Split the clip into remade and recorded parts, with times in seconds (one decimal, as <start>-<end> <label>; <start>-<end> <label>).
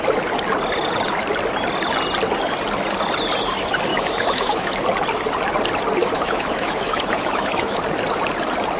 0.0-3.9 recorded; 3.9-4.7 remade; 4.7-6.0 recorded; 6.0-7.8 remade; 7.8-8.8 recorded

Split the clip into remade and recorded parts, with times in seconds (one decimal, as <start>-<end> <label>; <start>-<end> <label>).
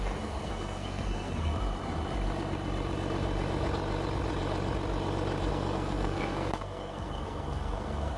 0.0-1.5 remade; 1.5-5.5 recorded; 5.5-8.2 remade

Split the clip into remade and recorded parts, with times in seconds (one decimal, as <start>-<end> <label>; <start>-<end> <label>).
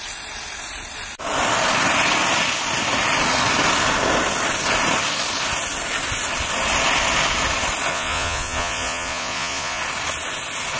0.0-7.9 recorded; 7.9-9.8 remade; 9.8-10.8 recorded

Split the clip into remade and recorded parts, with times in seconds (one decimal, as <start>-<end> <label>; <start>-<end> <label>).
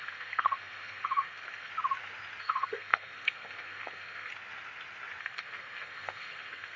0.0-1.7 remade; 1.7-2.4 recorded; 2.4-4.3 remade; 4.3-5.2 recorded; 5.2-6.8 remade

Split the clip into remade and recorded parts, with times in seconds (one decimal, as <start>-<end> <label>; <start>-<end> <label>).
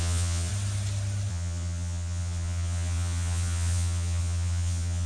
0.0-0.5 remade; 0.5-1.3 recorded; 1.3-5.1 remade